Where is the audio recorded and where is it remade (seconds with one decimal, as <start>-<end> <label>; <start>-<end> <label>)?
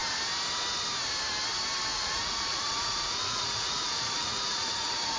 0.0-1.9 recorded; 1.9-5.2 remade